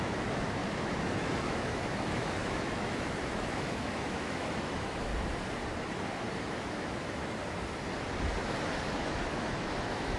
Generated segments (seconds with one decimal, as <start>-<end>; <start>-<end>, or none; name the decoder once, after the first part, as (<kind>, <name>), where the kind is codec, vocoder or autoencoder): 0.0-5.1 (autoencoder, DAC-VAE); 6.3-7.2; 8.9-10.2